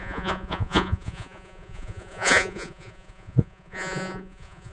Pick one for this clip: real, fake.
fake